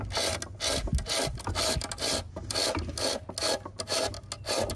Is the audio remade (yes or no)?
no